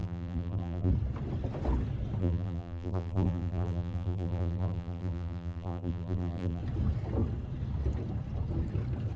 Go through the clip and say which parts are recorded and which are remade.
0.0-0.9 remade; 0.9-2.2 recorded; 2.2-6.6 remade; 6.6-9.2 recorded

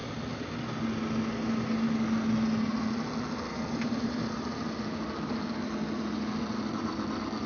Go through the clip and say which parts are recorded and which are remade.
0.0-3.5 recorded; 3.5-4.6 remade; 4.6-7.5 recorded